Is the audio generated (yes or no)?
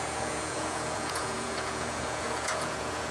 yes